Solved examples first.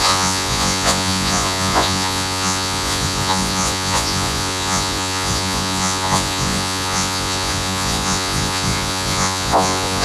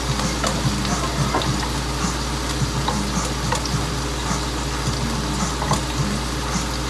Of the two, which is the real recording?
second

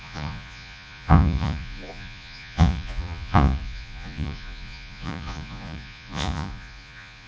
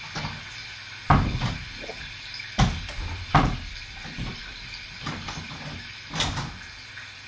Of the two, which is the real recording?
second